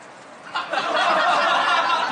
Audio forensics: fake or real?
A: real